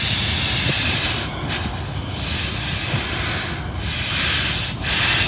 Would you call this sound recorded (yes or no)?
yes